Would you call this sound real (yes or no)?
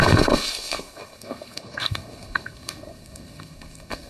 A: no